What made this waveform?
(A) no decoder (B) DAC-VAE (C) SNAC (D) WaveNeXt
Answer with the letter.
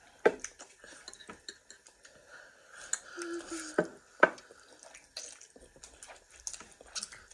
A